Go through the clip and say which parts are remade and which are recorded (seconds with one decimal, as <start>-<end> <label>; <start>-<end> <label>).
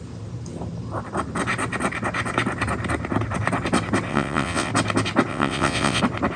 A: 0.0-4.1 recorded; 4.1-4.7 remade; 4.7-5.3 recorded; 5.3-6.0 remade; 6.0-6.4 recorded